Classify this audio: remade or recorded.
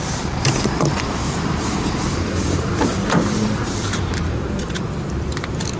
remade